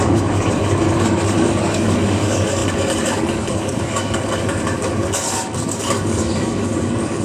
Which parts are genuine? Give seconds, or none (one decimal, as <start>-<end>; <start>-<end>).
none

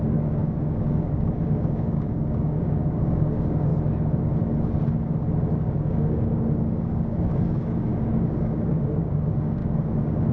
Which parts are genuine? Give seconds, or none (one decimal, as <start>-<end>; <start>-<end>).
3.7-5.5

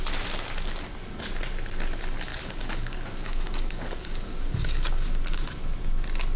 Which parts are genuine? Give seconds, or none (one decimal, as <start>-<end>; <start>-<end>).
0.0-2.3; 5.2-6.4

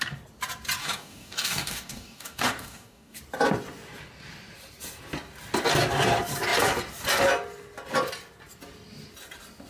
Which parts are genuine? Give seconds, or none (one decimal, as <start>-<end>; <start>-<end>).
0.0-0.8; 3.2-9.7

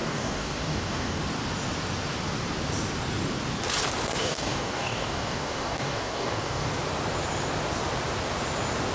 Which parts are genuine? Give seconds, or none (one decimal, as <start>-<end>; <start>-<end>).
1.2-4.2; 6.7-8.9

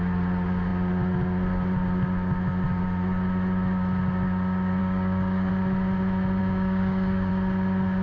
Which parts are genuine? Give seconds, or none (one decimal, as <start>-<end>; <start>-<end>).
0.0-4.8; 5.5-6.4; 7.3-8.0

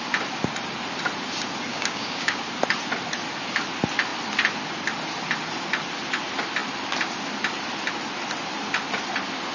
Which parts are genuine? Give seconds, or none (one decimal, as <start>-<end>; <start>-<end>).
0.0-1.7; 2.4-9.5